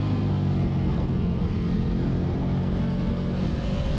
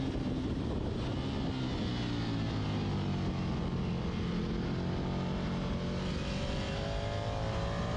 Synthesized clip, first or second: first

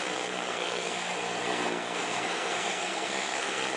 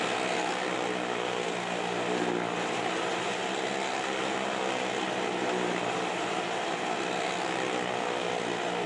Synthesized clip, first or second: first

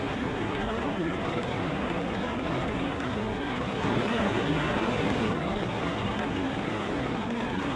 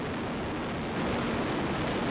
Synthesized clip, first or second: first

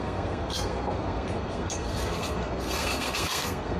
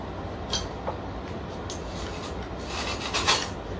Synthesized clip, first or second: first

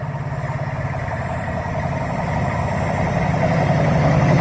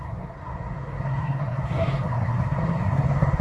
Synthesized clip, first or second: second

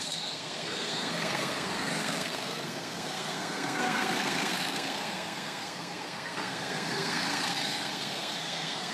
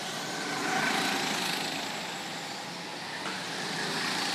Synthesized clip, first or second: first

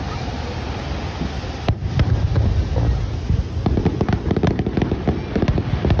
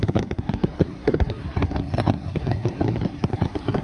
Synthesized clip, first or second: second